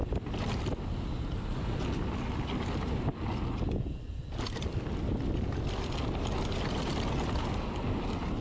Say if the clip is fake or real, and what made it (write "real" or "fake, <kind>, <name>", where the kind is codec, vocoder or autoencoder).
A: real